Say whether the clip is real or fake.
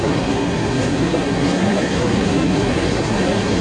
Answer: fake